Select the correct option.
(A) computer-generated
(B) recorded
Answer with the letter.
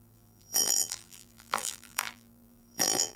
A